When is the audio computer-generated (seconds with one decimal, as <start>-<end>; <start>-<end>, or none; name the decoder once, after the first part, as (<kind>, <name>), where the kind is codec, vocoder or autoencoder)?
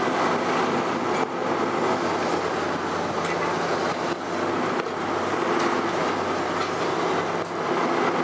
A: none